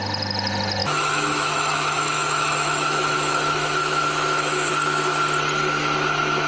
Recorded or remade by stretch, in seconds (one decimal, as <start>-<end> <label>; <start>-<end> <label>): 0.0-0.8 recorded; 0.8-4.7 remade; 4.7-6.5 recorded